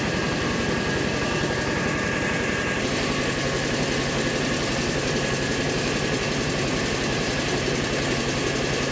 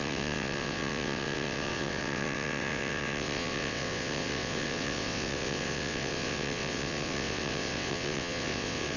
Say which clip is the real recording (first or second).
first